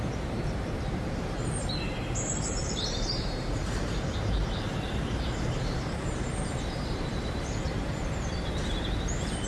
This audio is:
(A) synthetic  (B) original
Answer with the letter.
A